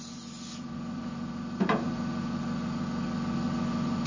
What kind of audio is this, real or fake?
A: real